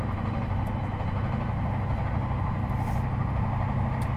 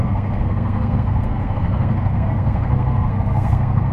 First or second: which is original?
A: first